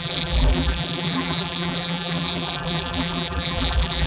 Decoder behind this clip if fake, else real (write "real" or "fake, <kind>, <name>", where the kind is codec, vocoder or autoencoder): fake, vocoder, BigVGAN v2